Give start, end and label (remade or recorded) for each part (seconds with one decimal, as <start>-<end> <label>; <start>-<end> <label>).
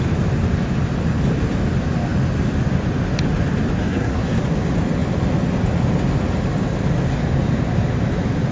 0.0-3.8 recorded; 3.8-4.4 remade; 4.4-8.5 recorded